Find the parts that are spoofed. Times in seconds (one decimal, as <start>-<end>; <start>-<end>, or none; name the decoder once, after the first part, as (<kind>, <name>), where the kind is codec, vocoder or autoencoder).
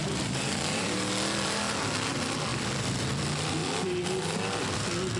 0.0-1.1 (vocoder, BigVGAN v2); 2.5-3.2